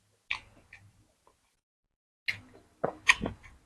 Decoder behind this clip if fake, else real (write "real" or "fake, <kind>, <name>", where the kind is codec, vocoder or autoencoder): real